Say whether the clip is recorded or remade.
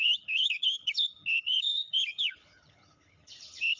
remade